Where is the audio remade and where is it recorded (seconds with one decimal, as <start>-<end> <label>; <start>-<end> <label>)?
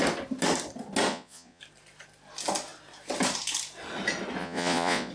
0.0-1.1 recorded; 1.1-1.6 remade; 1.6-4.4 recorded; 4.4-5.1 remade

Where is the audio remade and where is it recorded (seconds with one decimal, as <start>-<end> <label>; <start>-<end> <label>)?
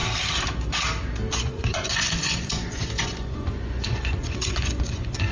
0.0-1.3 recorded; 1.3-5.3 remade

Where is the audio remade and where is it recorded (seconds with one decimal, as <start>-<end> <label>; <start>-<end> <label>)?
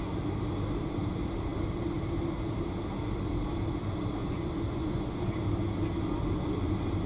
0.0-4.2 recorded; 4.2-5.4 remade; 5.4-7.1 recorded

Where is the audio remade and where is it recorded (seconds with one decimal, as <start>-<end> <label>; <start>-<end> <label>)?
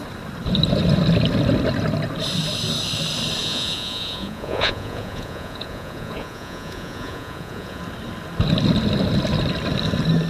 0.0-3.4 recorded; 3.4-7.8 remade; 7.8-10.3 recorded